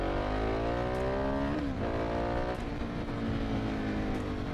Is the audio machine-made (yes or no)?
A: no